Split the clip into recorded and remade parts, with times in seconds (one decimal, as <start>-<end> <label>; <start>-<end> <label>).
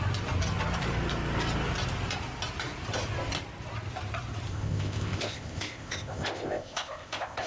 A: 0.0-4.5 recorded; 4.5-7.5 remade